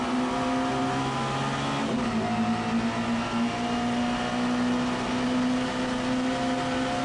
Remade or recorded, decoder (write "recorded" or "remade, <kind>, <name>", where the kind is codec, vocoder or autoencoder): recorded